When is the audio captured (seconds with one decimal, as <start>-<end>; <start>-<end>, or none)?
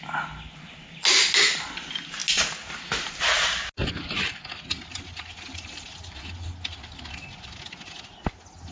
0.0-8.7